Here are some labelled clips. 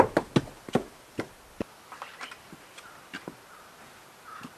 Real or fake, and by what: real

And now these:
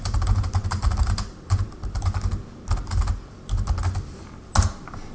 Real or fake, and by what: real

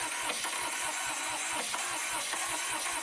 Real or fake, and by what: fake, vocoder, Vocos